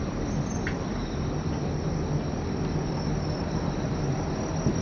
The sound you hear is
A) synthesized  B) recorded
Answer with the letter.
A